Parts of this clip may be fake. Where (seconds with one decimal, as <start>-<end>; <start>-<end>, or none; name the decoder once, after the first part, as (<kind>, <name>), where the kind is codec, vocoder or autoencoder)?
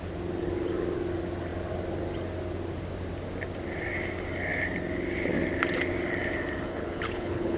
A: 6.7-7.6 (codec, HILCodec)